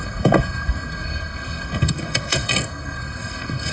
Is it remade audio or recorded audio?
remade